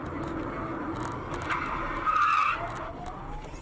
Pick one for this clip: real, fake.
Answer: real